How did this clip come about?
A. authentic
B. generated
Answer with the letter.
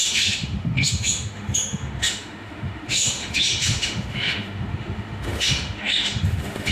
B